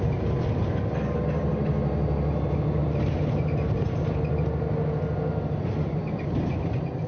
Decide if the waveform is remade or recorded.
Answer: recorded